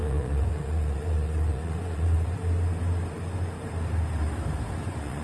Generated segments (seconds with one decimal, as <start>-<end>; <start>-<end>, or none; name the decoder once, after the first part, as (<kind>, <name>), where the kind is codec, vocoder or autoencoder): 0.0-2.4 (vocoder, Vocos); 4.8-5.2